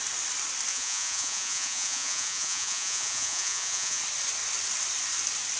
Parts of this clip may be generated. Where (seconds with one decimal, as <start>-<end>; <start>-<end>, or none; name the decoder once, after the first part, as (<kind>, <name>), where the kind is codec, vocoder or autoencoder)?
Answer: 0.7-4.0 (vocoder, Vocos)